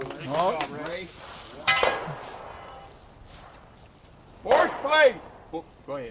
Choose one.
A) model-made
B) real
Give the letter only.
B